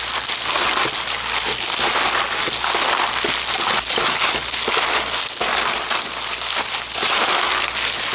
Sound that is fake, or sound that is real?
real